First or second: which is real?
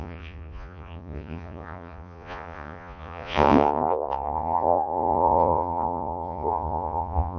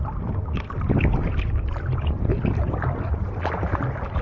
second